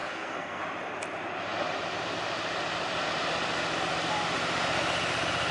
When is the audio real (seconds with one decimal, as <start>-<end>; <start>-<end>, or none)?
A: 0.6-5.5